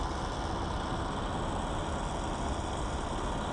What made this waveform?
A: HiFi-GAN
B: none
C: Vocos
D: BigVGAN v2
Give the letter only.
B